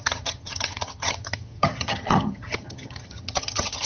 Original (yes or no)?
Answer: no